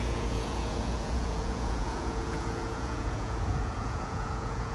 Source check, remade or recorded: remade